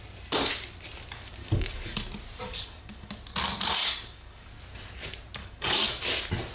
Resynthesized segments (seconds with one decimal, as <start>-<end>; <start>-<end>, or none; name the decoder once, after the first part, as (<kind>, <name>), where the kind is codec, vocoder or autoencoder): 1.4-2.1 (codec, DAC); 2.5-3.2; 3.8-4.5; 5.4-6.0